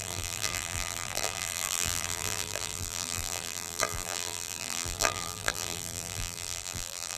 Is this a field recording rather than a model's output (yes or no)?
no